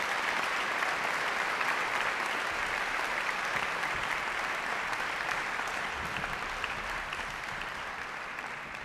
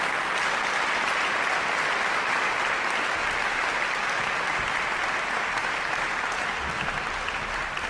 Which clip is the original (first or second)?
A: second